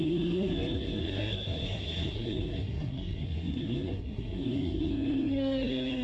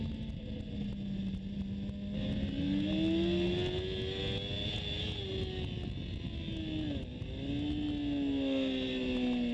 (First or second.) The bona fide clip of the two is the second